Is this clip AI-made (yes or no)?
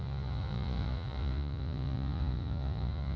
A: yes